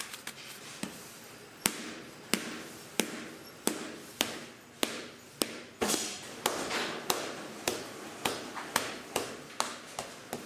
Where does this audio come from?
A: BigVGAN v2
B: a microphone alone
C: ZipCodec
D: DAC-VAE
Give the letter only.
B